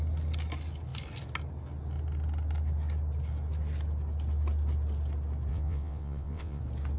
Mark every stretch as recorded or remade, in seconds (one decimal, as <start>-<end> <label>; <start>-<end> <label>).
0.0-5.5 recorded; 5.5-6.6 remade; 6.6-7.0 recorded